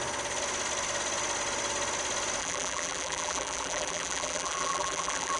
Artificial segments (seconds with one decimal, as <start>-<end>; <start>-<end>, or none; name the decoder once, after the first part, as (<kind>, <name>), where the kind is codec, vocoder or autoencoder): 2.4-5.4 (vocoder, BigVGAN v2)